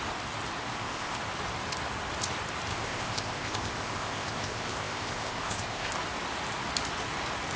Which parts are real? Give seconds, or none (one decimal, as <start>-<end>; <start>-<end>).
0.0-0.7; 1.2-2.7; 5.9-7.6